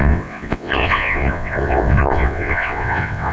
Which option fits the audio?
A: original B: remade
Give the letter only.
B